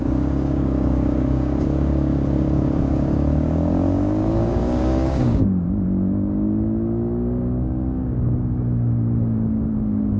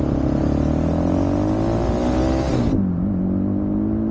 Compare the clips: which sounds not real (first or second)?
first